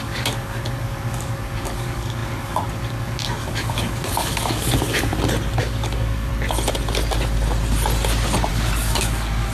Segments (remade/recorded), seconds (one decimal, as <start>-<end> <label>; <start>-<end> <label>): 0.0-5.1 remade; 5.1-5.6 recorded; 5.6-6.3 remade; 6.3-8.5 recorded; 8.5-9.5 remade